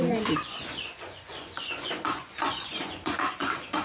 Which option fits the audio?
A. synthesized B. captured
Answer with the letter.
A